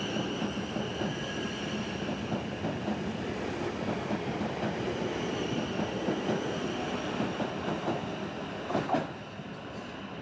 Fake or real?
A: real